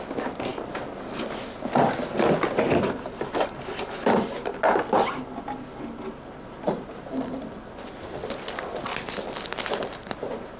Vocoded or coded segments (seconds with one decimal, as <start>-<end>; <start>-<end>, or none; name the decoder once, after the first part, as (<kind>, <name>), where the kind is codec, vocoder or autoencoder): none

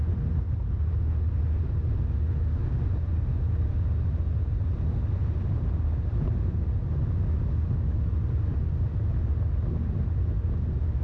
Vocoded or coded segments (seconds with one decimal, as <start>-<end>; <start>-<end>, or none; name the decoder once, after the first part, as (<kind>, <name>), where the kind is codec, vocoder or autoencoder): none

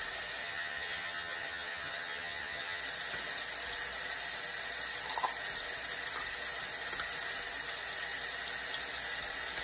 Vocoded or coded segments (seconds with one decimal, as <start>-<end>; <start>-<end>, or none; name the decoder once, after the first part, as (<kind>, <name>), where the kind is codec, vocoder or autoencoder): 0.4-2.8 (vocoder, HiFi-GAN)